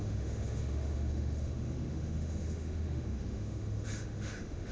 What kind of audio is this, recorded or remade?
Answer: remade